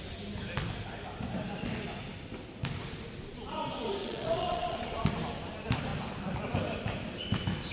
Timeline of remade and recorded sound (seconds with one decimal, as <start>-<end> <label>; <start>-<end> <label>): 0.0-4.0 recorded; 4.0-5.1 remade; 5.1-7.7 recorded